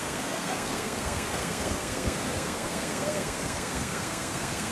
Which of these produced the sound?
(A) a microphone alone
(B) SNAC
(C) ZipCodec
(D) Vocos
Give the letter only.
B